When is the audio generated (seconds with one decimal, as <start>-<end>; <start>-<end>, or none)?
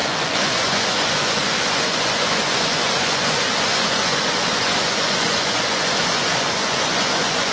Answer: 0.0-7.5